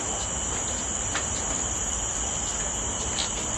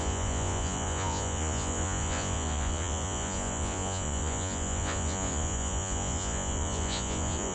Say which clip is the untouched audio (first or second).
first